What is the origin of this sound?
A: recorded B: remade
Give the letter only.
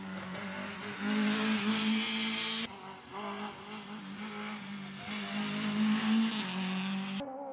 A